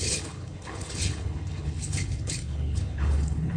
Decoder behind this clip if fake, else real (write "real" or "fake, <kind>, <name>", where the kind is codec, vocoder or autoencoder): fake, codec, HILCodec